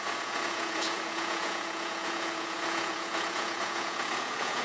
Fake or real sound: fake